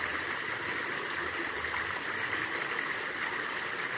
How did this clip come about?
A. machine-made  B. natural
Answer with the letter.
B